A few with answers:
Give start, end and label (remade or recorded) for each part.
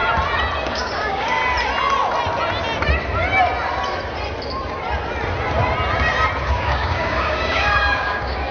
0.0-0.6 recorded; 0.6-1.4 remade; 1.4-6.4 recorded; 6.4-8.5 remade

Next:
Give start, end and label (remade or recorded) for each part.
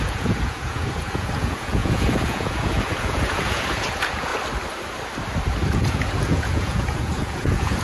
0.0-4.3 remade; 4.3-5.7 recorded; 5.7-7.8 remade